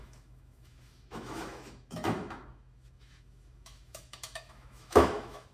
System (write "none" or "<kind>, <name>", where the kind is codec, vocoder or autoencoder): autoencoder, DAC-VAE